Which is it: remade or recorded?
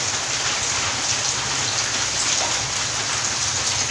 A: recorded